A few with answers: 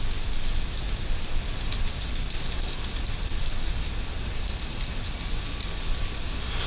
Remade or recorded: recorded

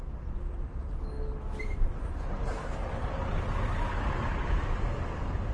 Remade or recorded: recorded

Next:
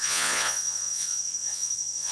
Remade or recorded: remade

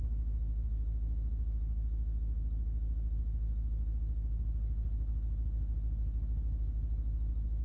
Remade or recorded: recorded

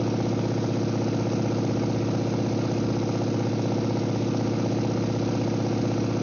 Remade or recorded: recorded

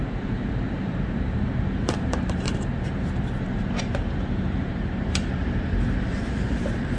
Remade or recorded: remade